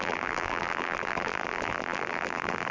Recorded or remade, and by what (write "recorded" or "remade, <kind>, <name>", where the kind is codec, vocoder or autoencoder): remade, vocoder, BigVGAN v2